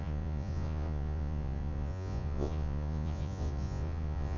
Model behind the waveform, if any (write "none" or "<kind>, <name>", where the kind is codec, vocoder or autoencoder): vocoder, Vocos